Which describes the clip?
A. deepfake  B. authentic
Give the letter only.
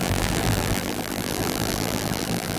A